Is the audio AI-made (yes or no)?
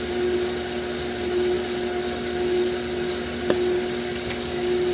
no